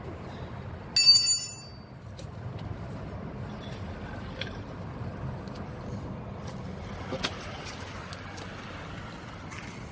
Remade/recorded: recorded